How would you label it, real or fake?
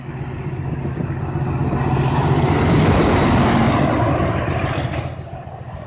real